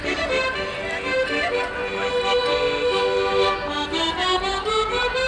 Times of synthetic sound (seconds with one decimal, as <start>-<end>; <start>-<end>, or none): none